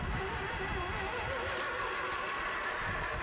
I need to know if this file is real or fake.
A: real